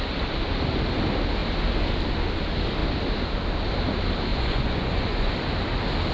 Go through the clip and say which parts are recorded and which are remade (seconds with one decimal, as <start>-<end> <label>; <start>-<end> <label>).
0.0-4.3 recorded; 4.3-5.3 remade; 5.3-6.1 recorded